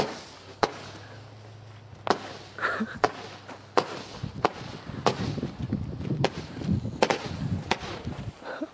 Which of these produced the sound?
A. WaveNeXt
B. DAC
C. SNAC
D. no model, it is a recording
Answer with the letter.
D